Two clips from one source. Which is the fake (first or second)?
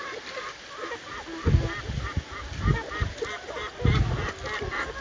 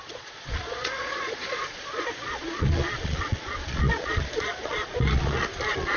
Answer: second